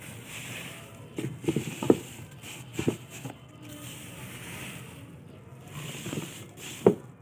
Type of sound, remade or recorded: recorded